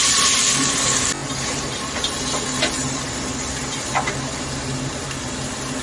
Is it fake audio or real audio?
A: real